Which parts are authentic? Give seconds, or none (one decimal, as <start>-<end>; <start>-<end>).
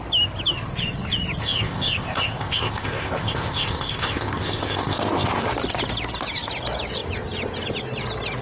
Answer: 0.0-1.4; 5.5-8.4